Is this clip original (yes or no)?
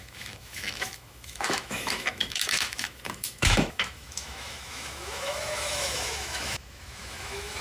no